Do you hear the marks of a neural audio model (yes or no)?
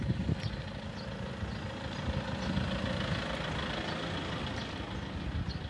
no